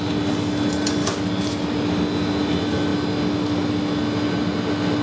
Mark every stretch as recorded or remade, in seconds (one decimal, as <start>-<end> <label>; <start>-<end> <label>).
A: 0.0-5.0 recorded